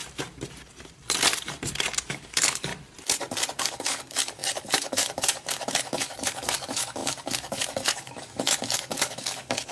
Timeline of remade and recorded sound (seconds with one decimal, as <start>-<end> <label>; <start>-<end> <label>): 0.0-2.1 recorded; 2.1-2.7 remade; 2.7-3.6 recorded; 3.6-9.7 remade